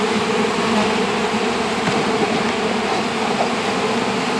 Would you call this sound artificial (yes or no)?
no